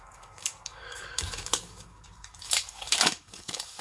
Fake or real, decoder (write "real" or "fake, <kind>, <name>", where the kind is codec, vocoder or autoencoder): fake, codec, DAC